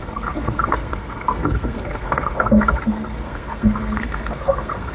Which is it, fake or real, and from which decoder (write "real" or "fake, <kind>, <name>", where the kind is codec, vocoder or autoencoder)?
fake, codec, SNAC